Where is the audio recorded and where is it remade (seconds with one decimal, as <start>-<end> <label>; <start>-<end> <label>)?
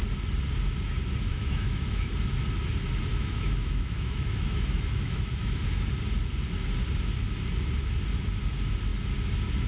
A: 0.0-1.3 recorded; 1.3-2.1 remade; 2.1-3.1 recorded; 3.1-5.9 remade; 5.9-9.7 recorded